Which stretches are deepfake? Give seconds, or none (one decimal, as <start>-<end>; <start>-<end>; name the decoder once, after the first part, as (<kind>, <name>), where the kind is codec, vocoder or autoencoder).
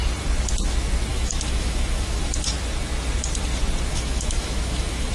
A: 1.1-2.2 (autoencoder, DAC-VAE); 3.9-5.1